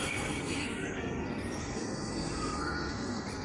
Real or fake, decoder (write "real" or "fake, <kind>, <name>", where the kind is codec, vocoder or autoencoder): fake, codec, SNAC